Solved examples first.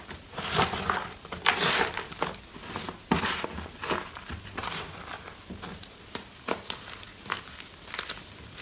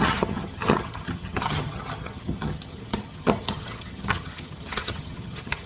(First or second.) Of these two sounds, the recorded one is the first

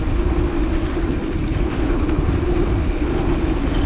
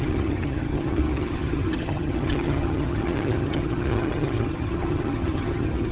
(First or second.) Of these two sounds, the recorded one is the first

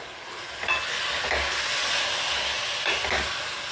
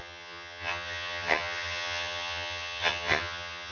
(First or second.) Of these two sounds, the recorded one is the first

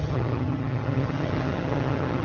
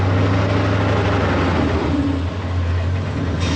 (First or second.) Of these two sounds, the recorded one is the second